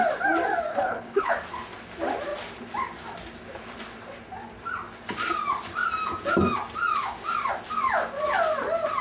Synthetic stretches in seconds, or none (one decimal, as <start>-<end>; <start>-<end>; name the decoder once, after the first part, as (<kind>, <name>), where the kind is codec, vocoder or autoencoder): 0.7-1.3 (codec, HILCodec)